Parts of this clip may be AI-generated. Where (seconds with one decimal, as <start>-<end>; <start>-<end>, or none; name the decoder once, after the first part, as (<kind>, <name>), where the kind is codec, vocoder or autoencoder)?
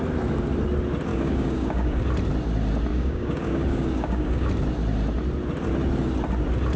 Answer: 1.1-2.0 (codec, DAC); 2.9-4.5